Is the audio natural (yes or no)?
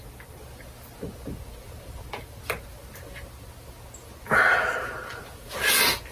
yes